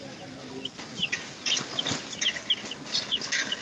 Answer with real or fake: real